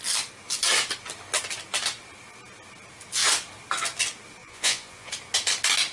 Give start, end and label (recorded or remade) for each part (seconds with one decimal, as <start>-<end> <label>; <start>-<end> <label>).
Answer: 0.0-4.4 recorded; 4.4-5.1 remade; 5.1-5.9 recorded